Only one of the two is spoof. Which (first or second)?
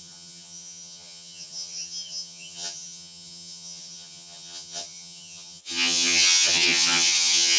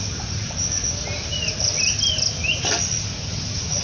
first